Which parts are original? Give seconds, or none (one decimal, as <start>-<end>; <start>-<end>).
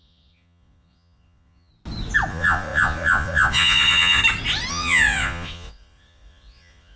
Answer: 1.7-2.3; 4.2-4.7